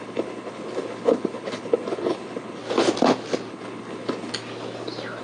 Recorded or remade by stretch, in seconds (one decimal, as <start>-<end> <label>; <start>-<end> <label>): 0.0-2.6 remade; 2.6-3.5 recorded; 3.5-4.3 remade; 4.3-5.2 recorded